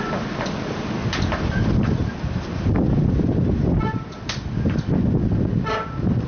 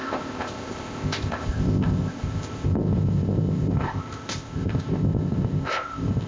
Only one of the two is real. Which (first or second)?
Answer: first